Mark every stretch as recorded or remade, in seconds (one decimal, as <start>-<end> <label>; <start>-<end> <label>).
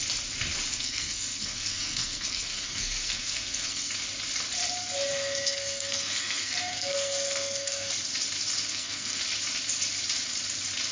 0.0-0.7 recorded; 0.7-3.9 remade; 3.9-5.1 recorded; 5.1-7.9 remade; 7.9-8.7 recorded; 8.7-9.2 remade; 9.2-10.9 recorded